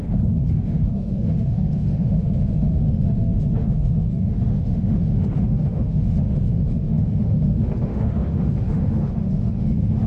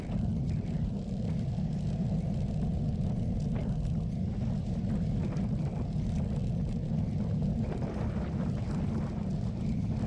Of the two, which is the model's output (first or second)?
first